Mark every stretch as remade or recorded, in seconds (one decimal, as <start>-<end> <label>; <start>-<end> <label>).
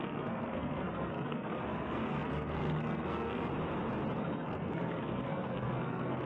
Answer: 0.0-3.5 remade; 3.5-4.2 recorded; 4.2-6.3 remade